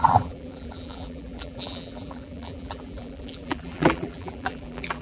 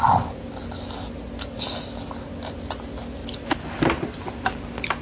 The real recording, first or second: second